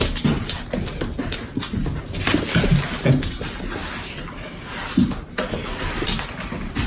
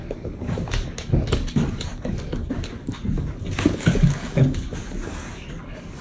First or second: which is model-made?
second